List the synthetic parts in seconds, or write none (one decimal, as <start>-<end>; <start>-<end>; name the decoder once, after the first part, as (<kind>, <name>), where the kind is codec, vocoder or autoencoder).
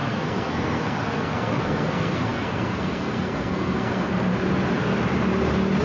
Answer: 0.0-4.3 (codec, SNAC)